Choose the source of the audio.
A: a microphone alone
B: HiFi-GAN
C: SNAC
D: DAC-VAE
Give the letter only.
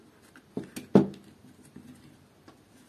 A